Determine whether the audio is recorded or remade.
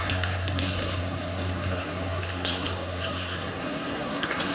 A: remade